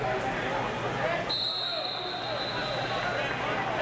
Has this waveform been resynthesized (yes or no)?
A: no